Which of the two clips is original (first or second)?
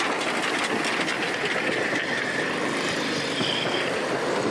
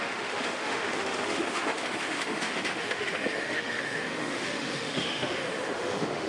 first